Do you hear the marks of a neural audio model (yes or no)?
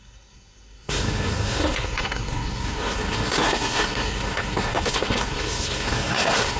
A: yes